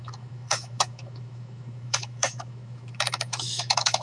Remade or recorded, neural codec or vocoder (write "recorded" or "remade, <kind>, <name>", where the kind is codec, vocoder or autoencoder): remade, autoencoder, DAC-VAE